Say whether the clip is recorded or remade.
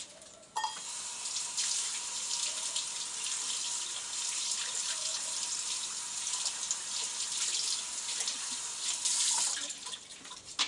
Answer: recorded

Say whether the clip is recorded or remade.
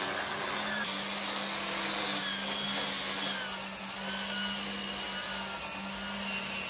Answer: recorded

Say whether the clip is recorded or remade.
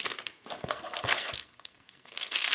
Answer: remade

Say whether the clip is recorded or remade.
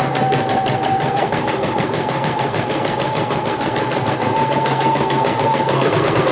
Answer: remade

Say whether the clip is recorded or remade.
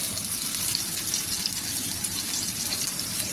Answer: recorded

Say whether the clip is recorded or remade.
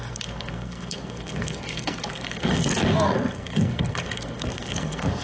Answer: remade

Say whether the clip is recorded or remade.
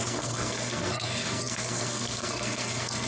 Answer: remade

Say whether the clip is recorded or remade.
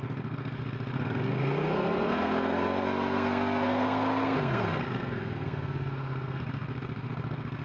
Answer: remade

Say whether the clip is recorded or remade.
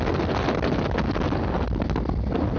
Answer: recorded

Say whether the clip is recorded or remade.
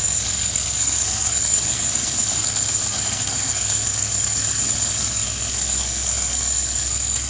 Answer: remade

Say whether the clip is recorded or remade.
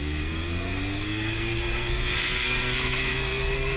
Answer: remade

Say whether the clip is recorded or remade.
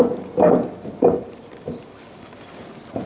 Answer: recorded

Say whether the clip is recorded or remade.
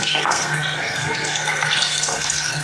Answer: remade